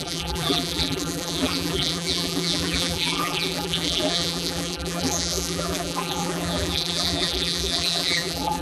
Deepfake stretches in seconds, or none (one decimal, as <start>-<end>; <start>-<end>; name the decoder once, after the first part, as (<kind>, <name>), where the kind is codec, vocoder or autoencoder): 0.0-8.6 (vocoder, BigVGAN v2)